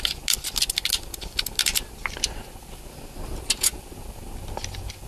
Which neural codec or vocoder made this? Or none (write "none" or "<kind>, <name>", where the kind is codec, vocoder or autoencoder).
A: none